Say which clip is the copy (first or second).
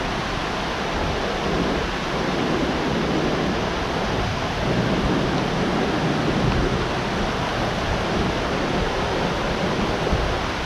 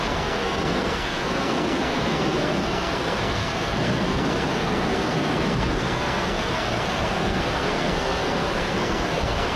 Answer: second